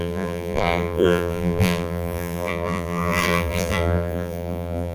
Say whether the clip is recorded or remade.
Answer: remade